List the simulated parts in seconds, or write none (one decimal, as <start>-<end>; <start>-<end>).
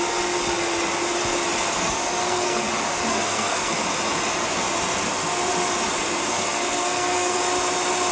2.2-2.7; 3.1-3.7; 6.3-7.4